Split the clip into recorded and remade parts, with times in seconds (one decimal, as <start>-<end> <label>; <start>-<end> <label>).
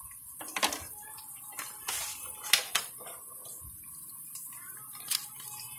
0.0-0.5 remade; 0.5-1.3 recorded; 1.3-5.8 remade